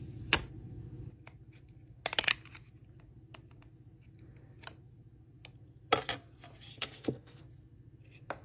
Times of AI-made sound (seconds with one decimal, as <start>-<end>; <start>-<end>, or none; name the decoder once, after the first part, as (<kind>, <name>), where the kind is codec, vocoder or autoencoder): 6.7-7.4 (codec, SNAC)

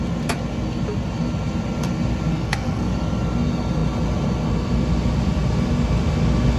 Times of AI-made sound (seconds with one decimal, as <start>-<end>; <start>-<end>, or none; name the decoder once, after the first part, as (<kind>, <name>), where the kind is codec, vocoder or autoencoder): 2.3-2.9 (codec, SNAC)

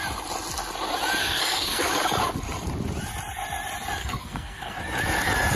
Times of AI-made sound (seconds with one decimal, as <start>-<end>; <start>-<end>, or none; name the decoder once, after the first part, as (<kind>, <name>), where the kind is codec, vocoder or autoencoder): 1.2-2.0 (codec, SNAC); 4.0-4.8

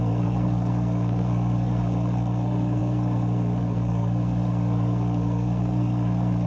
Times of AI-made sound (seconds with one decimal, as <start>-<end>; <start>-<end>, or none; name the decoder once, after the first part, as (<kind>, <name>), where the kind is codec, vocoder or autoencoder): 0.0-6.5 (codec, SNAC)

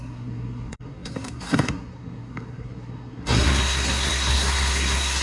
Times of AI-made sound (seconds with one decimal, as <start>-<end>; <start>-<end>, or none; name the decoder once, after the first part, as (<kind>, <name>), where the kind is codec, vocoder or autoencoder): 0.0-5.2 (codec, SNAC)